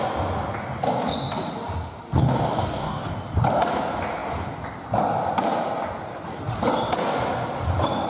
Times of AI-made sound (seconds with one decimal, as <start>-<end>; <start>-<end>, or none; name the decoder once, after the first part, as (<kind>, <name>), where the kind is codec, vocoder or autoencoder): 2.2-3.1 (codec, DAC)